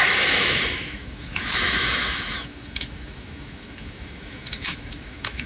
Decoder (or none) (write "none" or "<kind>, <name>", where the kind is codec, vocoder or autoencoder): autoencoder, DAC-VAE